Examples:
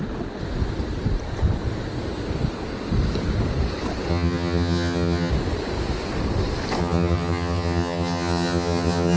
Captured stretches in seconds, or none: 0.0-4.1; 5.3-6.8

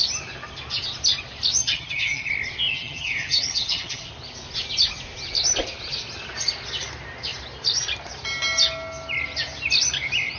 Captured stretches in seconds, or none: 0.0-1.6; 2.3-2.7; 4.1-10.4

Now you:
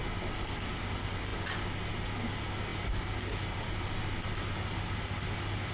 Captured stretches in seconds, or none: 0.0-5.7

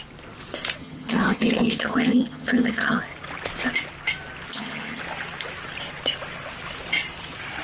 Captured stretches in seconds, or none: 0.0-0.8; 3.0-4.5; 5.0-7.6